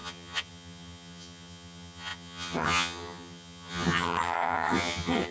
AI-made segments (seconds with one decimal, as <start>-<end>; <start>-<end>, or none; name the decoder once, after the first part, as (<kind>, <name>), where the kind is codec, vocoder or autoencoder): 0.0-5.3 (vocoder, HiFi-GAN)